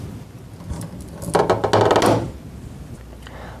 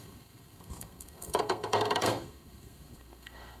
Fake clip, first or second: second